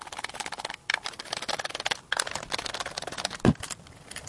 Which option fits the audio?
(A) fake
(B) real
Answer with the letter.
B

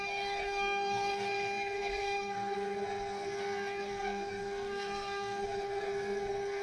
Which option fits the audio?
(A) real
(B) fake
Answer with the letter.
B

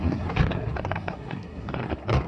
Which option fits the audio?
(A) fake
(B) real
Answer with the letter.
A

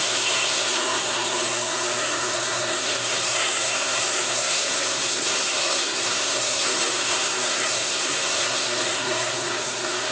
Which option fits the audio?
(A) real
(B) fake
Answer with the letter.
B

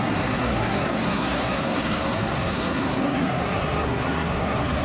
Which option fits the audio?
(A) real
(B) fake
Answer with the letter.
B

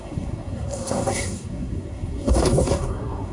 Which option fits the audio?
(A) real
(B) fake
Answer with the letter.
B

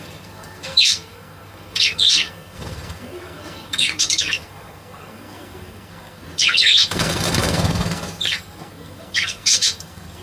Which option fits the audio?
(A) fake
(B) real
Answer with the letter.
A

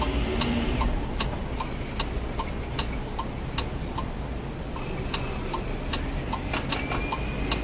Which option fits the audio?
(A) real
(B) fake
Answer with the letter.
A